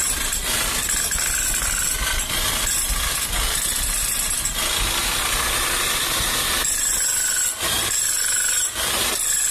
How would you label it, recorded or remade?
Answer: recorded